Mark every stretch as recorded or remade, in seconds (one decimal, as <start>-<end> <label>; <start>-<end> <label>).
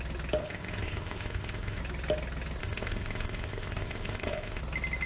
0.0-0.4 recorded; 0.4-1.8 remade; 1.8-2.6 recorded; 2.6-4.6 remade; 4.6-5.1 recorded